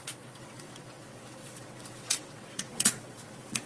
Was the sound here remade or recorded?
remade